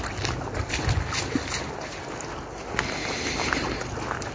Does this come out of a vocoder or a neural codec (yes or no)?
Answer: no